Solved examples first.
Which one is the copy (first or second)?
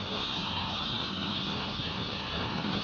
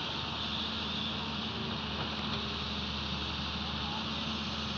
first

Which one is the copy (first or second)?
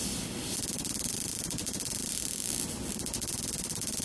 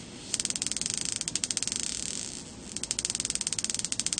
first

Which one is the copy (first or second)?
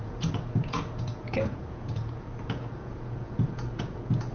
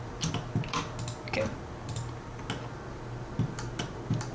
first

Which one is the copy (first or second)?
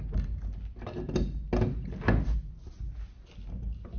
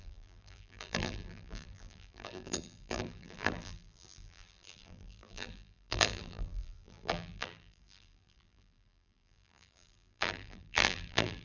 second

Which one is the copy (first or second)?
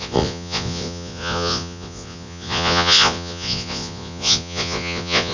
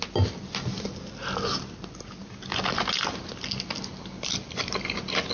first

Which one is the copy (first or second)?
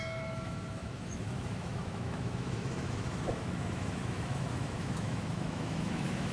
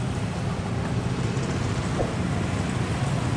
first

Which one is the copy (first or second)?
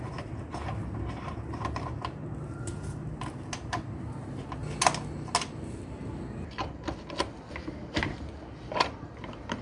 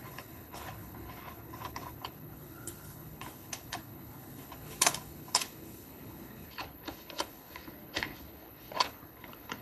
second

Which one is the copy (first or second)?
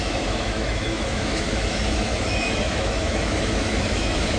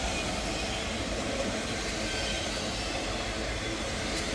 first